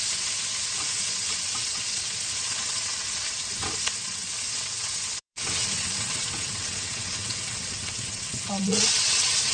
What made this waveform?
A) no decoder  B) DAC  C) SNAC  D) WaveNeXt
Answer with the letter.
D